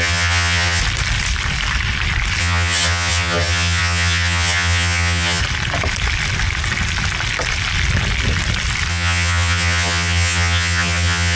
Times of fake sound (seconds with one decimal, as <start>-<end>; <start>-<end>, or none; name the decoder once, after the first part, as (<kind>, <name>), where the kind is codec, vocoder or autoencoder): 0.0-0.8 (vocoder, HiFi-GAN); 2.4-5.4; 8.9-11.4